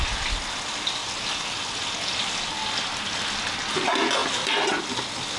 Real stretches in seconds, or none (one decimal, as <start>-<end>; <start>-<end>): 0.0-5.4